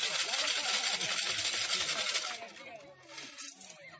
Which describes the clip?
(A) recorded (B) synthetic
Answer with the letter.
A